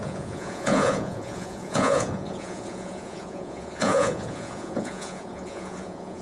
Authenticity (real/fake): fake